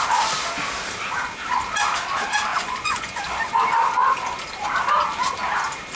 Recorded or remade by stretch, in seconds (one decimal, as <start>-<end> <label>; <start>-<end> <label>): 0.0-2.5 recorded; 2.5-3.2 remade; 3.2-6.0 recorded

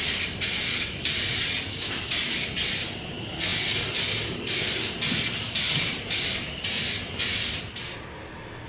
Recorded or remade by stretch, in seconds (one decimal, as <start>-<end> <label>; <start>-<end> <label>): 0.0-8.7 recorded

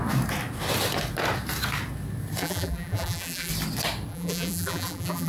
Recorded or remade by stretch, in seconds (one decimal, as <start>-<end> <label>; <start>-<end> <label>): 0.0-2.4 recorded; 2.4-3.5 remade; 3.5-4.1 recorded; 4.1-5.3 remade